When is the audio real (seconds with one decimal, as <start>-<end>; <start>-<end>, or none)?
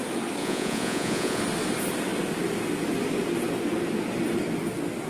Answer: 0.0-0.4; 1.4-5.1